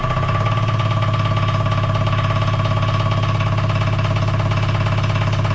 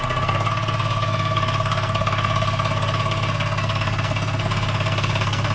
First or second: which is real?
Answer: first